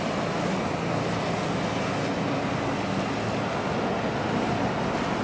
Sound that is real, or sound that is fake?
real